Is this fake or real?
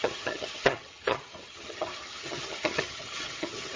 fake